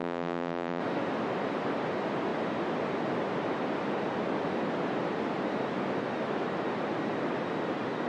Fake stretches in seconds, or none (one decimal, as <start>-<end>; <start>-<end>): 0.0-0.8